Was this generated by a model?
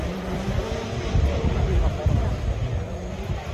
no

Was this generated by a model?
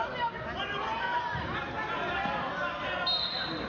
no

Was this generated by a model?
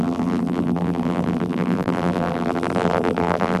yes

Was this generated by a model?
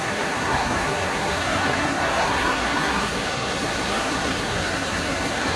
yes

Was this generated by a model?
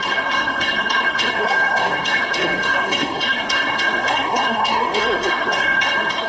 yes